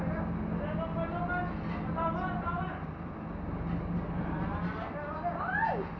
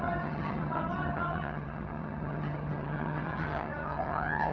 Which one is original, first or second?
first